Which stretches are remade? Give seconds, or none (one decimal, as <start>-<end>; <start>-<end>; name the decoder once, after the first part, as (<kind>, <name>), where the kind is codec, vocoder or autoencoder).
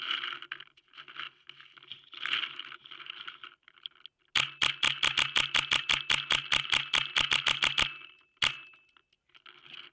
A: 2.8-3.9 (vocoder, BigVGAN v2)